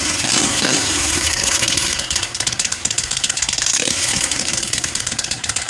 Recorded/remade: remade